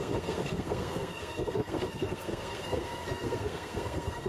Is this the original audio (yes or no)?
no